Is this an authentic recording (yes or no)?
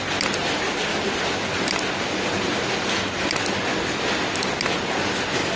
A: yes